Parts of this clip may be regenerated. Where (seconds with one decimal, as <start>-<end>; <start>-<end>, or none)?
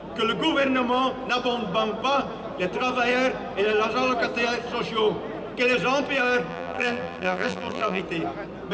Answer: 6.5-8.0